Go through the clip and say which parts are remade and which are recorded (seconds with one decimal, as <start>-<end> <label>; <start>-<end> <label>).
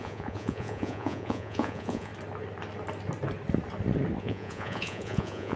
0.0-2.1 remade; 2.1-4.2 recorded; 4.2-5.6 remade